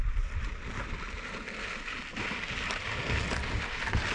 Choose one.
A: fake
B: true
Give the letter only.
B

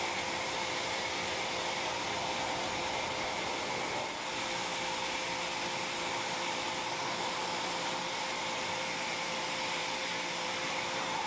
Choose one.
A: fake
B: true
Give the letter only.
A